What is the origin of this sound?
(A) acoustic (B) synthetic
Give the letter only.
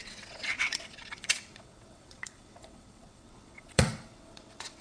B